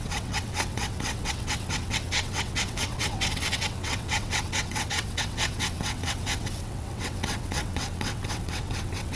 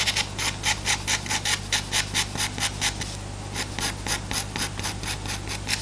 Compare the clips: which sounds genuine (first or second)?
second